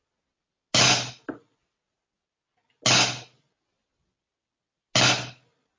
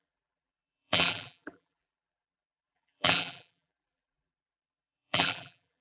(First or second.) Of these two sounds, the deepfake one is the second